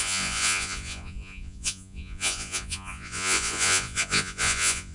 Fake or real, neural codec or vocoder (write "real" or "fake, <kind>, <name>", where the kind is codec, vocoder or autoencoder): fake, vocoder, Vocos